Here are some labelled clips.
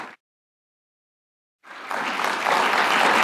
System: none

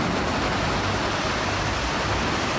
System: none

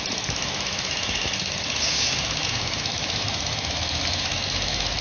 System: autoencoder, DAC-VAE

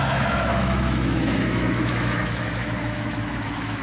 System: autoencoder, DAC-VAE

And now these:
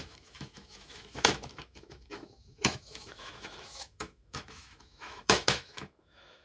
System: autoencoder, DAC-VAE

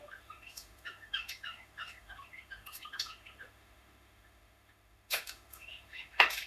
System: autoencoder, DAC-VAE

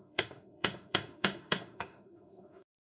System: autoencoder, DAC-VAE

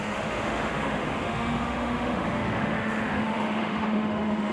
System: autoencoder, DAC-VAE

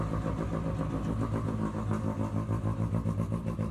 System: none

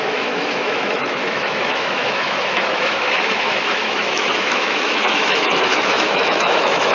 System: autoencoder, DAC-VAE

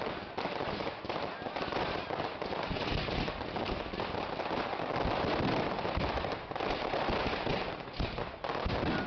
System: none